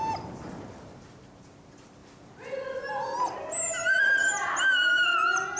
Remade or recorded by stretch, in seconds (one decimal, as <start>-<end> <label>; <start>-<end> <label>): 0.0-5.6 recorded